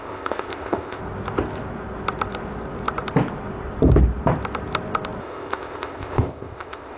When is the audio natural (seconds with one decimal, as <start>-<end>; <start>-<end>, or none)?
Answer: 1.0-5.2